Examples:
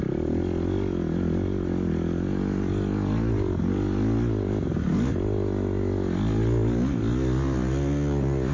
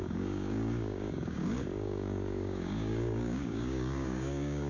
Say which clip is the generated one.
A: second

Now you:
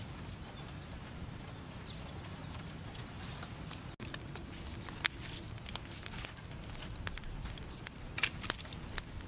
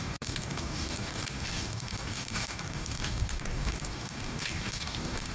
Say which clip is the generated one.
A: second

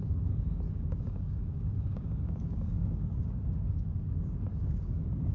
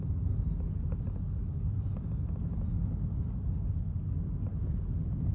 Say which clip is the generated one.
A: first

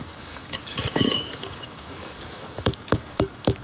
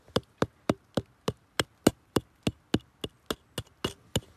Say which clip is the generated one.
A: first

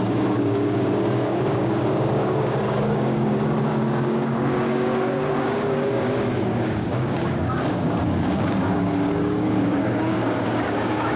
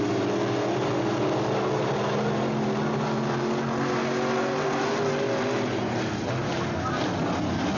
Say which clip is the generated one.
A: first